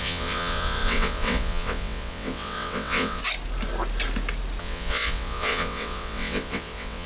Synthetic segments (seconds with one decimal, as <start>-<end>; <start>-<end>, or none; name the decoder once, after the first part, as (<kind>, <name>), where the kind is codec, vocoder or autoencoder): 0.0-3.2 (vocoder, WaveNeXt); 4.6-7.1